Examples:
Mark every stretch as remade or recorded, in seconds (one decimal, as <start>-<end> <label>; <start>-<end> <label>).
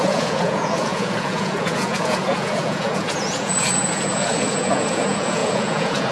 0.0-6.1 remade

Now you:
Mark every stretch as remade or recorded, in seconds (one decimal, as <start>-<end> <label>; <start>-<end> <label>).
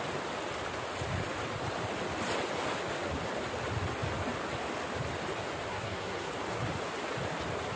0.0-5.7 recorded; 5.7-6.3 remade; 6.3-7.8 recorded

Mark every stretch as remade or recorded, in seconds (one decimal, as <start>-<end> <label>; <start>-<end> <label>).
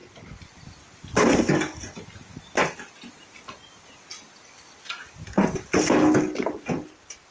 0.0-7.3 recorded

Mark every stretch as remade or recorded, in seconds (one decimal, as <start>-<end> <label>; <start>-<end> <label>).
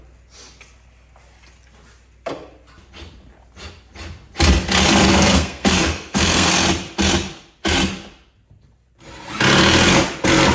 0.0-5.1 recorded; 5.1-6.5 remade; 6.5-10.5 recorded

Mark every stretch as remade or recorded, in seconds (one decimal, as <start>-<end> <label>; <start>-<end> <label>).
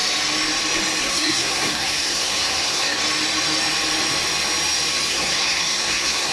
0.0-1.0 recorded; 1.0-3.0 remade; 3.0-5.1 recorded; 5.1-6.3 remade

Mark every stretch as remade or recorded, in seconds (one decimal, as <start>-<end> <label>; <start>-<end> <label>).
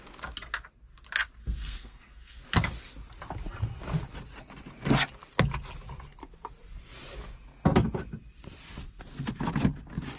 0.0-1.4 recorded; 1.4-2.4 remade; 2.4-8.8 recorded; 8.8-9.3 remade; 9.3-10.2 recorded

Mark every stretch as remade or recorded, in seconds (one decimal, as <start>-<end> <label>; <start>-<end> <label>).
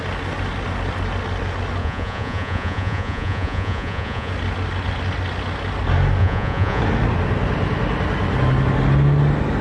0.0-1.8 recorded; 1.8-4.3 remade; 4.3-6.2 recorded; 6.2-6.8 remade; 6.8-9.6 recorded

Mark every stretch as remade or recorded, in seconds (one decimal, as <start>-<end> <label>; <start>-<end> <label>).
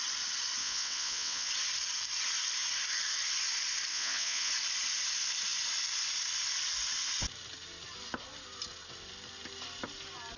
0.0-0.6 recorded; 0.6-1.5 remade; 1.5-3.9 recorded; 3.9-4.5 remade; 4.5-10.4 recorded